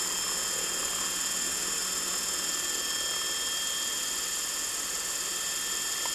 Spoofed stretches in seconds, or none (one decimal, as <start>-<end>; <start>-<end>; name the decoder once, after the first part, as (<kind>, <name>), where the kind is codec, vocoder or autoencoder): none